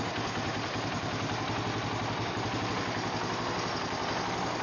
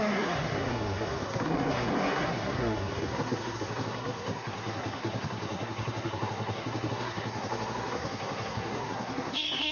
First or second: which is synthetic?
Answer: second